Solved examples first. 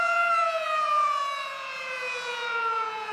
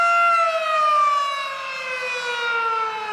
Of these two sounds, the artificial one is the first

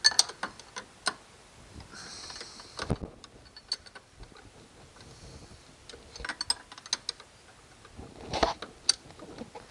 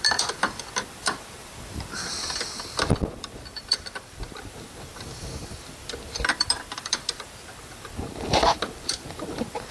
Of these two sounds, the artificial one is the second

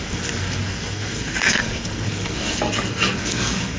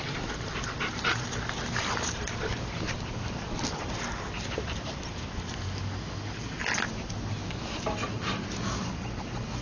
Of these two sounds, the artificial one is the first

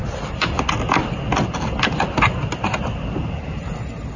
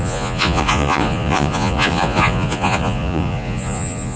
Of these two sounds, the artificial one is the second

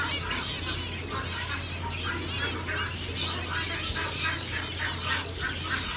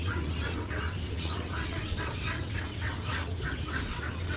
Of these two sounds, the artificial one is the second